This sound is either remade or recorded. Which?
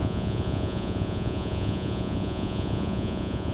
remade